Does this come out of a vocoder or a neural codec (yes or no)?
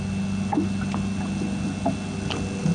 no